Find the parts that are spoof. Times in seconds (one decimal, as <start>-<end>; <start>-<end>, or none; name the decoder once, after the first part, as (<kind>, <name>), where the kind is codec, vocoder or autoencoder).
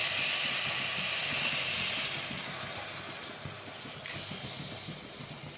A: none